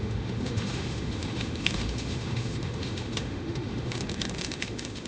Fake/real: fake